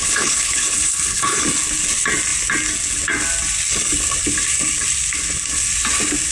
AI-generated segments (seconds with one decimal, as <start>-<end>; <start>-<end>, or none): 0.0-1.4